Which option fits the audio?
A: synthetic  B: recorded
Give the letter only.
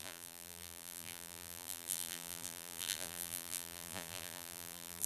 A